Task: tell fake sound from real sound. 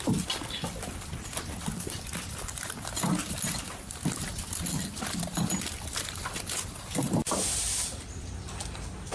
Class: fake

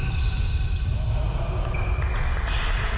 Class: real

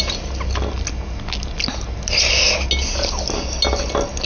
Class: real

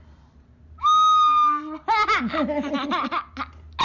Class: real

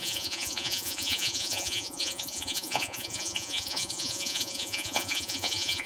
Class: fake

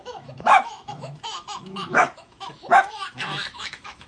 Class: fake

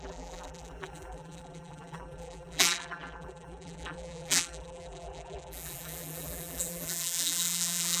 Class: fake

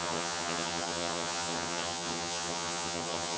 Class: fake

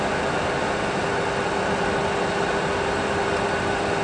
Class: real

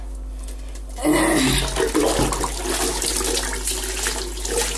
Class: real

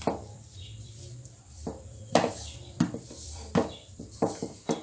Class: fake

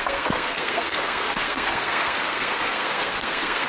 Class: fake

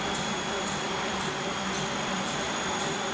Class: fake